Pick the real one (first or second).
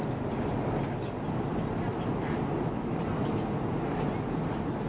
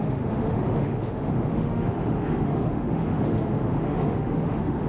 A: first